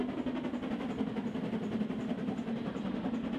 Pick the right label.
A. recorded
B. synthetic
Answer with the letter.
A